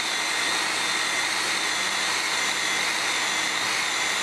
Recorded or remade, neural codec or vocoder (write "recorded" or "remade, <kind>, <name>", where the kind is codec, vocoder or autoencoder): recorded